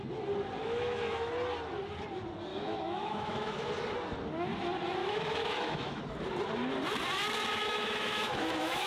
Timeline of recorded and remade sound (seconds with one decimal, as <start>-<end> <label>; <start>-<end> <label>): 0.0-0.6 recorded; 0.6-1.3 remade; 1.3-2.5 recorded; 2.5-3.7 remade; 3.7-5.0 recorded; 5.0-6.0 remade; 6.0-7.6 recorded; 7.6-8.9 remade